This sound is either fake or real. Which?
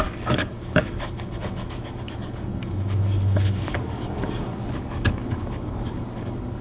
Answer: fake